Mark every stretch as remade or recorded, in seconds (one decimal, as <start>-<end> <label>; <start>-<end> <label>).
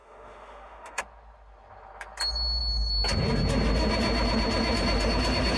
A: 0.0-1.0 remade; 1.0-5.6 recorded